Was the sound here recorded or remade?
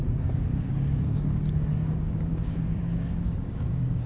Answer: remade